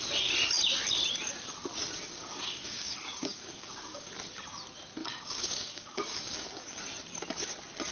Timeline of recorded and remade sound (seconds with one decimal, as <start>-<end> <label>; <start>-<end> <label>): 0.0-2.1 recorded; 2.1-4.1 remade; 4.1-5.0 recorded; 5.0-6.8 remade; 6.8-7.9 recorded